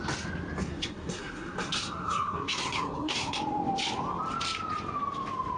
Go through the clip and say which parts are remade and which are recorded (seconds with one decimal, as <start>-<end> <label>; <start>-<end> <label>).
0.0-0.6 recorded; 0.6-3.4 remade; 3.4-5.6 recorded